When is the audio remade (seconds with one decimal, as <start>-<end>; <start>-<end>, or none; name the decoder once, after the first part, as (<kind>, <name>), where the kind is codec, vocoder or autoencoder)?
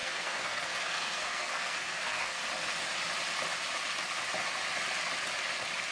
0.0-2.4 (codec, SNAC)